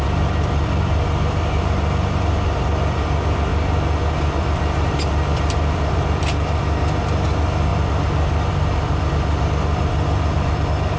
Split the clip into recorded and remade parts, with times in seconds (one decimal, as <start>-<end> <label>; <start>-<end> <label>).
0.0-3.5 remade; 3.5-4.4 recorded; 4.4-11.0 remade